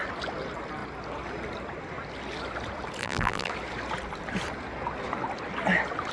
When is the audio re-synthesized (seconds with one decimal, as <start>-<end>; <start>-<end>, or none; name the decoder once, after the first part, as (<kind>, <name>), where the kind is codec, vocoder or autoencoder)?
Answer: 3.0-3.5 (vocoder, BigVGAN v2)